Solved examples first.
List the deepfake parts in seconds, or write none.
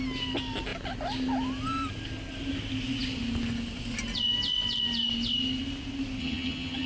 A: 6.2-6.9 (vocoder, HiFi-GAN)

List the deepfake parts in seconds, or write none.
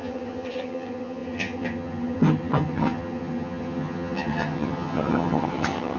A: 0.0-6.0 (vocoder, HiFi-GAN)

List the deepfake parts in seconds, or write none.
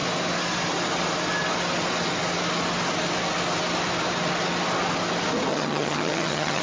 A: 5.5-6.6 (vocoder, HiFi-GAN)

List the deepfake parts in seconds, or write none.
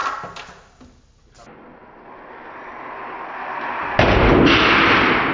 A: none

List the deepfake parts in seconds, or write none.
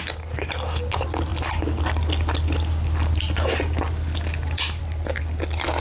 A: none